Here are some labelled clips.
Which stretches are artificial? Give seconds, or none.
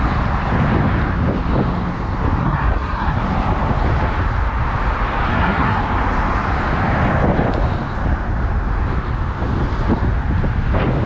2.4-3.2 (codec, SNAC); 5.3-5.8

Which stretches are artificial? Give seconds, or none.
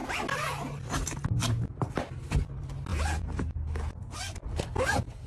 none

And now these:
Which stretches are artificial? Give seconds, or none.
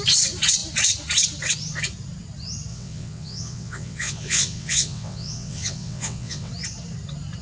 2.7-6.5 (vocoder, WaveNeXt)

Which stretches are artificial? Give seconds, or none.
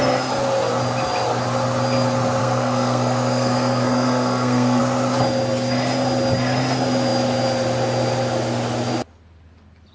2.4-4.8 (codec, SNAC)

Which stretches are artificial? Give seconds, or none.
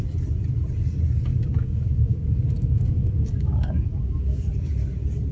1.3-4.5 (codec, DAC)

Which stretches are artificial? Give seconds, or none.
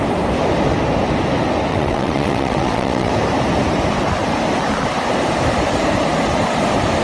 1.7-3.1 (vocoder, WaveNeXt)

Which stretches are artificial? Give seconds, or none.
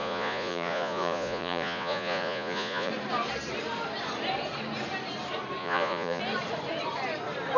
0.0-2.9 (vocoder, Vocos); 5.6-6.2